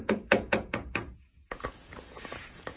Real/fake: fake